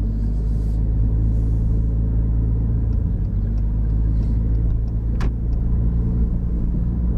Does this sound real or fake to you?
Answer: real